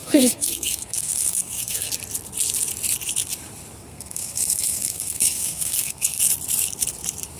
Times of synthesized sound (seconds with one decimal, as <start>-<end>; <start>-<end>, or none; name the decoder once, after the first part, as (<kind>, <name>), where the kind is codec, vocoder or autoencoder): 0.0-1.9 (codec, SNAC); 3.9-6.3